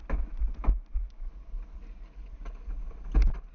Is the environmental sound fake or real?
real